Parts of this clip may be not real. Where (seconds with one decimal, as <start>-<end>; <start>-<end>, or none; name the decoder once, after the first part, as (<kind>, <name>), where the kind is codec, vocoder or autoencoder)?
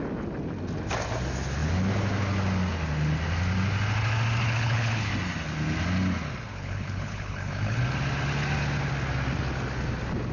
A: 4.4-5.1 (codec, HILCodec); 6.5-7.8